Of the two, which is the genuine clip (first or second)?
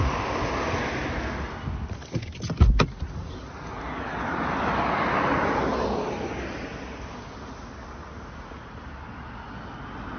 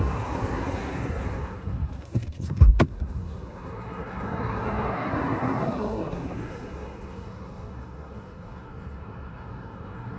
first